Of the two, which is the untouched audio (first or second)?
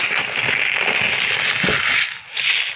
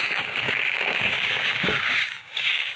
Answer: first